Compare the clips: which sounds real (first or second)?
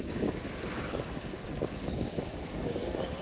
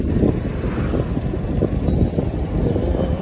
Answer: second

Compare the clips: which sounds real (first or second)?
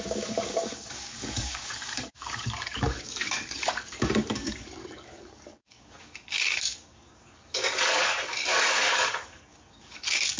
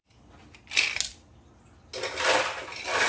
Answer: second